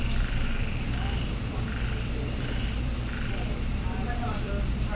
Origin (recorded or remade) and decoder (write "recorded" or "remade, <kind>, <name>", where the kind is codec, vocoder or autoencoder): remade, vocoder, BigVGAN v2